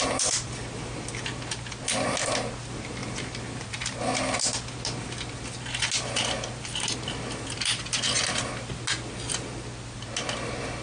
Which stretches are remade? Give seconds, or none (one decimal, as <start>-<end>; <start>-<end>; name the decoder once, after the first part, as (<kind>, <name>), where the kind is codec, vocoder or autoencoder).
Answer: none